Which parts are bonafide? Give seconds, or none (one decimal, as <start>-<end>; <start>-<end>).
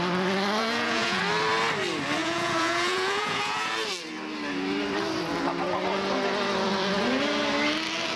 0.0-0.6; 1.2-2.2; 3.7-8.2